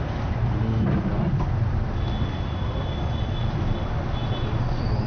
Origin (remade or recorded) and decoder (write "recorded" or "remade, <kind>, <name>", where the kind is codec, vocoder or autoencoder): recorded